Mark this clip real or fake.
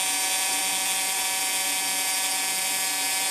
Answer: fake